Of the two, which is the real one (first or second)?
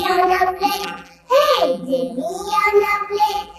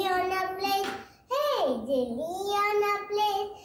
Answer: second